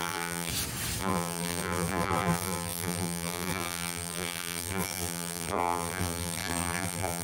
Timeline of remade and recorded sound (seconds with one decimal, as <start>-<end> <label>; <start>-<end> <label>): 0.0-0.5 remade; 0.5-1.0 recorded; 1.0-7.2 remade